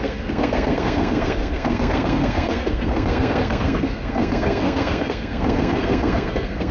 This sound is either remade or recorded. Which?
remade